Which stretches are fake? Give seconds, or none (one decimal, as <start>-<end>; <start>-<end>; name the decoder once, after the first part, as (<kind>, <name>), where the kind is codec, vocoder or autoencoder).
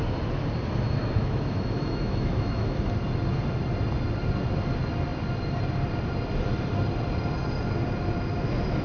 1.0-2.9 (autoencoder, DAC-VAE)